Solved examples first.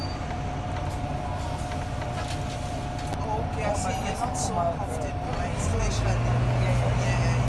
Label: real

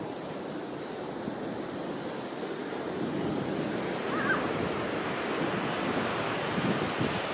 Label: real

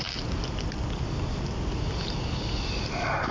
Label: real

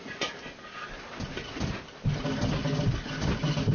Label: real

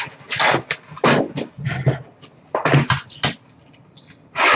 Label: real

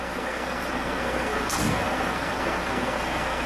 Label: fake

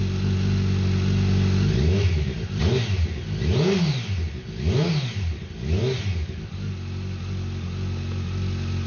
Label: real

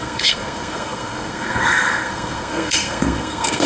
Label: fake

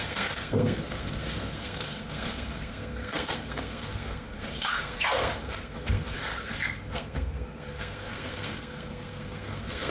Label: fake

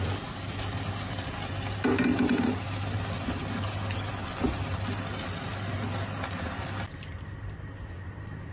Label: real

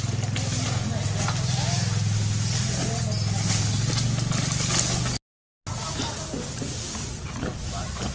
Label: real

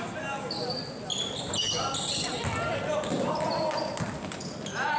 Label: real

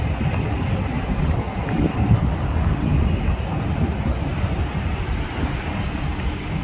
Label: real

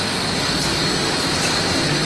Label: real